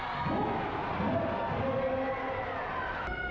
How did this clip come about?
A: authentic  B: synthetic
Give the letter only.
A